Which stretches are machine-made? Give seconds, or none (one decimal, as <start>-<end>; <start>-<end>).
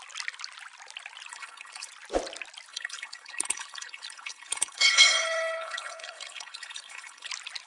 1.3-1.9; 2.7-7.3